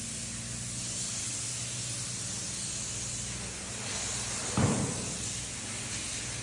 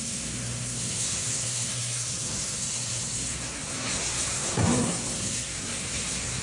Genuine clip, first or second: first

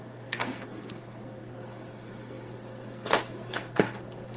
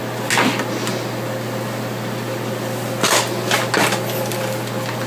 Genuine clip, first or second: second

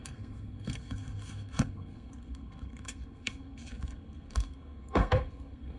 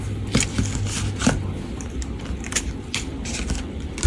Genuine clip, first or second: second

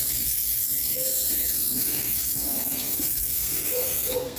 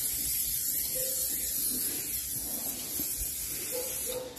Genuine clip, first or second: second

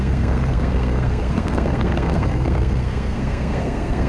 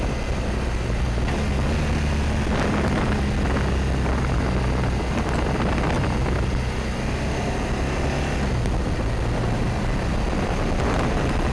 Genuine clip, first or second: second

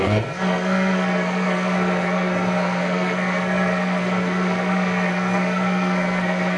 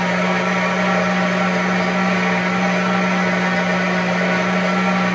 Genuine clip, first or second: second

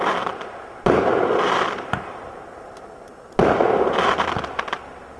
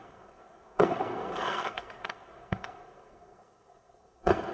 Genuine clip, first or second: first